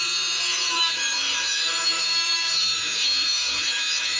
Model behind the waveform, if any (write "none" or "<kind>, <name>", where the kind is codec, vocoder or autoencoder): autoencoder, DAC-VAE